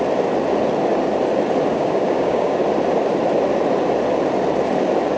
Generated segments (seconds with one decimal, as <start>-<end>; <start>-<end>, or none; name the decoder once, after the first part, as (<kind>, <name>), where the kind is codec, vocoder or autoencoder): 1.7-2.6 (codec, DAC)